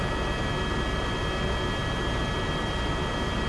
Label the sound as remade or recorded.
recorded